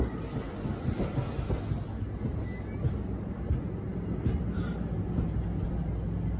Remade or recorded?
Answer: recorded